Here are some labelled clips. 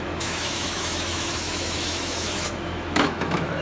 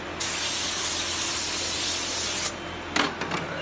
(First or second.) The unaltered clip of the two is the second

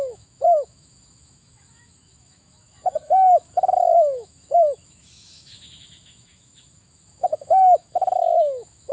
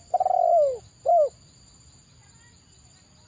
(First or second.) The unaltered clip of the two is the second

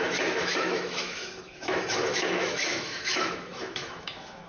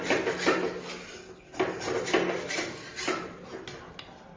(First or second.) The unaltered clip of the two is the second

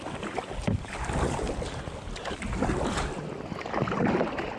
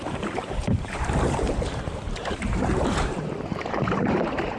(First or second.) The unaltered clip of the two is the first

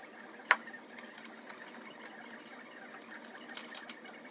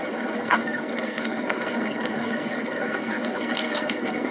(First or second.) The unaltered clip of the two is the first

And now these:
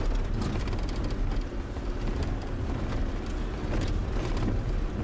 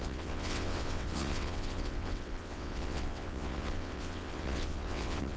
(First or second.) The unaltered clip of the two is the first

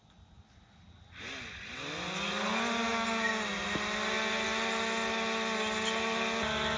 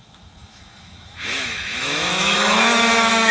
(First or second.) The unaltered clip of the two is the first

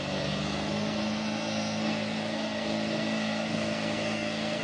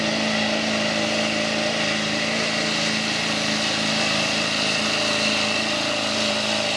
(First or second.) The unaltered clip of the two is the second